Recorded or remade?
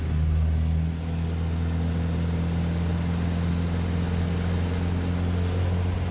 recorded